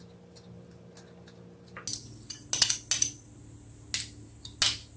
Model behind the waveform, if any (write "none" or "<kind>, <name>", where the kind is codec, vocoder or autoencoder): none